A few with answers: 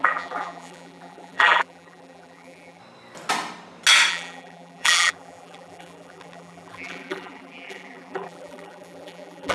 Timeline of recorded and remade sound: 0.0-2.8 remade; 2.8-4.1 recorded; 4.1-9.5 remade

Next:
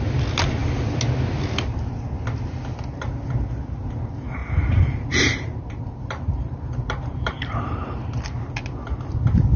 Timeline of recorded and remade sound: 0.0-4.4 recorded; 4.4-8.5 remade; 8.5-9.6 recorded

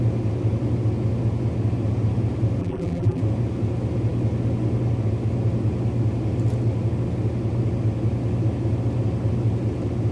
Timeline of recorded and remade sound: 0.0-2.6 recorded; 2.6-3.2 remade; 3.2-10.1 recorded

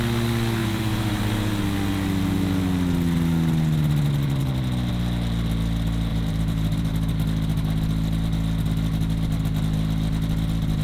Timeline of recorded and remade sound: 0.0-0.6 recorded; 0.6-1.6 remade; 1.6-6.1 recorded; 6.1-6.9 remade; 6.9-10.8 recorded

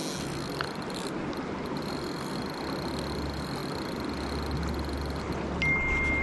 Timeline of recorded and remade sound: 0.0-6.2 recorded

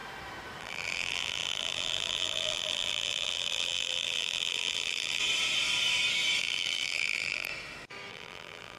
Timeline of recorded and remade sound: 0.0-0.6 recorded; 0.6-5.2 remade; 5.2-6.4 recorded; 6.4-7.5 remade; 7.5-8.1 recorded; 8.1-8.8 remade